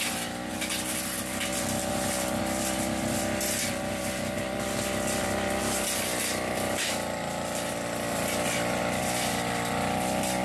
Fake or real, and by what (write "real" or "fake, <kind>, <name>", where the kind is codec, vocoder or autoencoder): real